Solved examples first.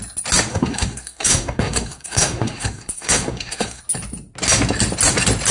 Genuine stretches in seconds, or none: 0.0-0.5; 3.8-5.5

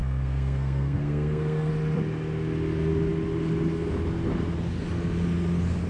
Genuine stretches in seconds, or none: 1.7-5.9

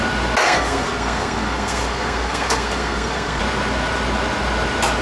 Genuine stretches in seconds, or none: 0.0-0.4; 3.4-5.0